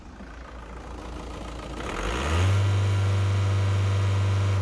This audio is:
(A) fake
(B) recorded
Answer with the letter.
B